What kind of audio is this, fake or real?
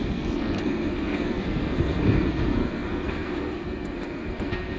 fake